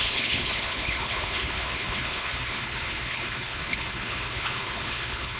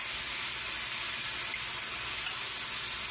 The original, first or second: second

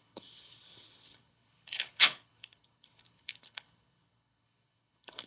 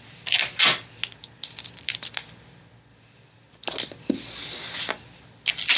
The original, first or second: second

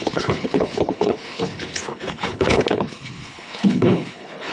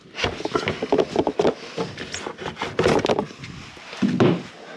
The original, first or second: second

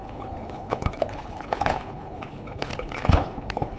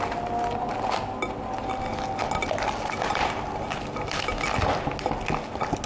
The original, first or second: second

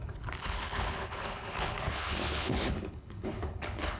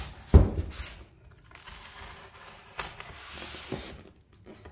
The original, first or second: second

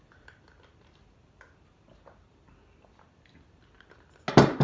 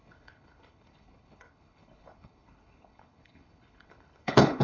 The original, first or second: first